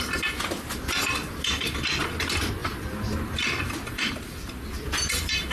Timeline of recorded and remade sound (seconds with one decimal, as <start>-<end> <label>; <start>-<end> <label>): 0.0-5.5 recorded